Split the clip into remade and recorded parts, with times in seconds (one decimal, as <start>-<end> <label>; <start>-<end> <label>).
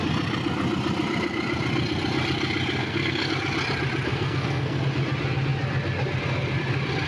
0.0-2.8 recorded; 2.8-3.3 remade; 3.3-4.1 recorded; 4.1-4.8 remade; 4.8-7.1 recorded